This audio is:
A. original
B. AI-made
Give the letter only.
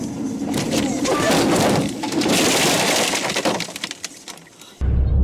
B